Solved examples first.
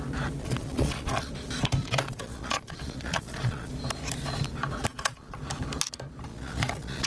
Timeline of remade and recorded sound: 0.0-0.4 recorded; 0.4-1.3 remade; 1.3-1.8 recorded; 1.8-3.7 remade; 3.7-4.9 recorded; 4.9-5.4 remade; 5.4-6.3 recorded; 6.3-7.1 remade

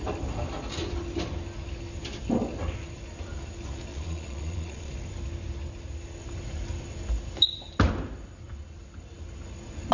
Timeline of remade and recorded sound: 0.0-3.9 recorded; 3.9-4.9 remade; 4.9-9.9 recorded

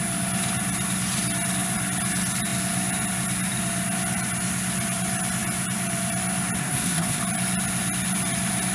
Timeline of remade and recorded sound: 0.0-6.6 recorded; 6.6-7.2 remade; 7.2-8.7 recorded

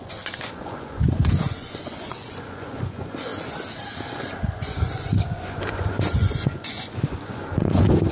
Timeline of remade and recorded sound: 0.0-3.3 remade; 3.3-4.1 recorded; 4.1-8.1 remade

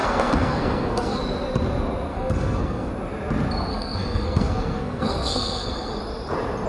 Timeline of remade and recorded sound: 0.0-1.2 remade; 1.2-2.1 recorded; 2.1-2.9 remade; 2.9-3.7 recorded; 3.7-6.0 remade; 6.0-6.7 recorded

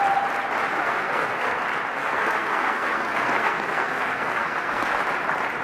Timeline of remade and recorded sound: 0.0-0.7 recorded; 0.7-1.6 remade; 1.6-2.0 recorded; 2.0-5.0 remade; 5.0-5.6 recorded